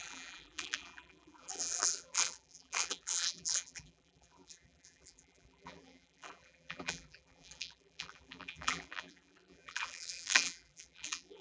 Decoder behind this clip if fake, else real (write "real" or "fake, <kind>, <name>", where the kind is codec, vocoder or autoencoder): fake, vocoder, BigVGAN v2